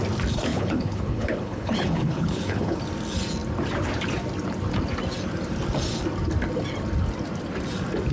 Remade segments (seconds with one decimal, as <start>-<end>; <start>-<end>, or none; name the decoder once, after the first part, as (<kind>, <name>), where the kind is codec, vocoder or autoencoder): 0.5-2.8 (codec, HILCodec)